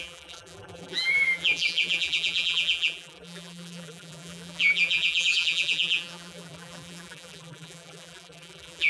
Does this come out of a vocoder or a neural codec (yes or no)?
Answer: yes